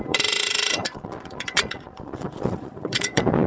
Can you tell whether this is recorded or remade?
remade